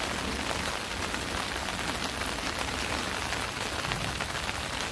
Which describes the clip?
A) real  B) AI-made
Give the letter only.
A